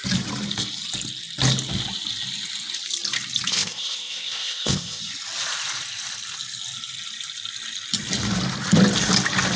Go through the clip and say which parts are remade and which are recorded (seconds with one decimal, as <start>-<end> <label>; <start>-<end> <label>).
0.0-3.5 recorded; 3.5-5.0 remade; 5.0-9.6 recorded